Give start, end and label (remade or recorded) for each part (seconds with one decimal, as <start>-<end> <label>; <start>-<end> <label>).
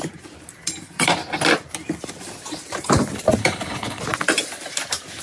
0.0-3.4 recorded; 3.4-4.0 remade; 4.0-5.2 recorded